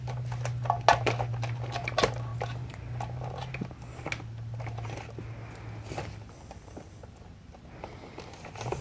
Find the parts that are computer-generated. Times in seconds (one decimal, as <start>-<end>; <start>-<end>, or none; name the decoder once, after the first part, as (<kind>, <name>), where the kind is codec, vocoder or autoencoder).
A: none